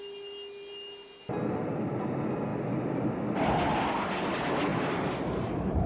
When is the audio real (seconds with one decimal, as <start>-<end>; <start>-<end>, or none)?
0.0-4.7